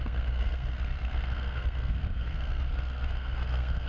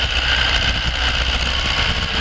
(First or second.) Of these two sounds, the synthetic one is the first